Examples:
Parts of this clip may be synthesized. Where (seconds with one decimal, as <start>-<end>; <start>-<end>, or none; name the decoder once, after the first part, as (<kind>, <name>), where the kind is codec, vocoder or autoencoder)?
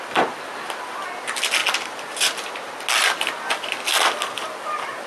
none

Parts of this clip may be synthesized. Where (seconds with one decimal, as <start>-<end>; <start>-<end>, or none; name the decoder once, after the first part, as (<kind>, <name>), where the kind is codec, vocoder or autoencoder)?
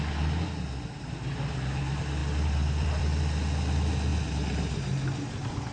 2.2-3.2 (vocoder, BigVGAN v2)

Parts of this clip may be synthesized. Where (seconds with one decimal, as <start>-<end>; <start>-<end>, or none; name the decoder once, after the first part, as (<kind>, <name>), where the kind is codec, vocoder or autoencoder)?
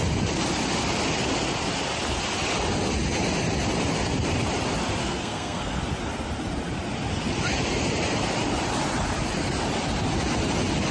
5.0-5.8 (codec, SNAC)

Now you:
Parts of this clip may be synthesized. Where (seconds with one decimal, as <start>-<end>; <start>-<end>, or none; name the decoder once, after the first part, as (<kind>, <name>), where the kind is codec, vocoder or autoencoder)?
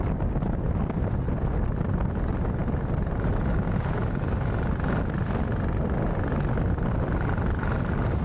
none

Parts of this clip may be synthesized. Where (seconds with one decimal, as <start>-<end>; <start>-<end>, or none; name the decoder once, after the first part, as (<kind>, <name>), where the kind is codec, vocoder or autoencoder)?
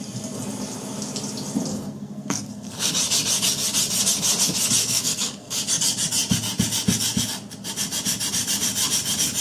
1.7-2.9 (codec, SNAC); 4.8-5.5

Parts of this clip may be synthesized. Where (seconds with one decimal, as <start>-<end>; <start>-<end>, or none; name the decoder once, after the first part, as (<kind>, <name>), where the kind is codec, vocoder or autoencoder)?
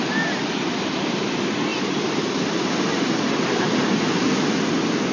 0.0-5.1 (vocoder, BigVGAN v2)